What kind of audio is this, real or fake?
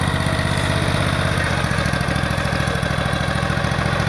real